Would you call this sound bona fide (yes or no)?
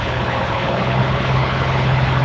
no